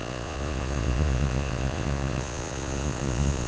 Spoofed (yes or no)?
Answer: yes